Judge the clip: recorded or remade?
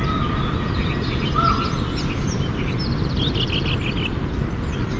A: recorded